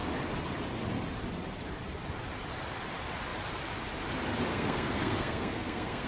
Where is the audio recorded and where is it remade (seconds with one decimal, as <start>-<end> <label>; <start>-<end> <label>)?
0.0-4.5 recorded; 4.5-6.1 remade